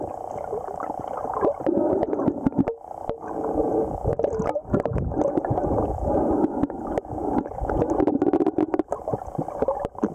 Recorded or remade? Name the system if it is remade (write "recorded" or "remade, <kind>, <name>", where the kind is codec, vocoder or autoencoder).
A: recorded